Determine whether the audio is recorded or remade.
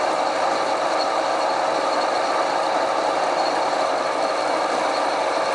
recorded